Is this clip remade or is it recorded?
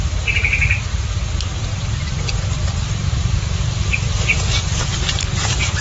remade